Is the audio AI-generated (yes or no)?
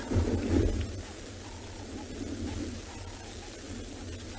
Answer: no